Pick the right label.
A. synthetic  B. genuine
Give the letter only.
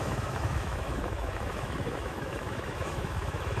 A